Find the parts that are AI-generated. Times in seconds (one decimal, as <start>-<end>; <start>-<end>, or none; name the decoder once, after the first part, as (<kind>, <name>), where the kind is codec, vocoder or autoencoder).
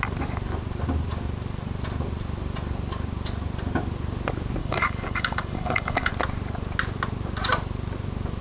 4.6-6.1 (codec, DAC)